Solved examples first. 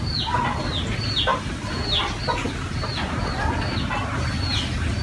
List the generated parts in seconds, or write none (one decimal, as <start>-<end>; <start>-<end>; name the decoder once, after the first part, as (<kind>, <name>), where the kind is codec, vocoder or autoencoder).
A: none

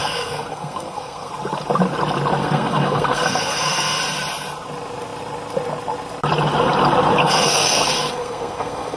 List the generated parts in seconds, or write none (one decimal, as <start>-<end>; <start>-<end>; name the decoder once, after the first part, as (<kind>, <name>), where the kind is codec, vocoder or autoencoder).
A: 0.0-1.3 (codec, SNAC); 2.4-4.0; 7.2-9.0

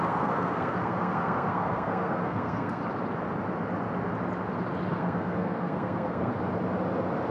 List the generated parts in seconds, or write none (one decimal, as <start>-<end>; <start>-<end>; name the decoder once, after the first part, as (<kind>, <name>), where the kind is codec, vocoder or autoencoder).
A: 0.0-2.8 (codec, SNAC); 4.9-6.3

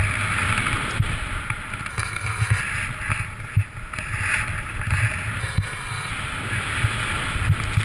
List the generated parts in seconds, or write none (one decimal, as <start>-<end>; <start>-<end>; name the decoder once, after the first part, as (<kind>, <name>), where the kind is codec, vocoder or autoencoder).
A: 1.9-2.6 (codec, SNAC); 5.4-6.1